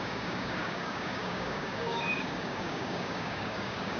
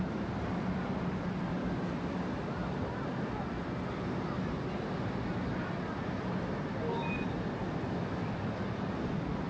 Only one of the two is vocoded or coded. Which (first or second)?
first